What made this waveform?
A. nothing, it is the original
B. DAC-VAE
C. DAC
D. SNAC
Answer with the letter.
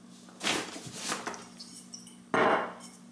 A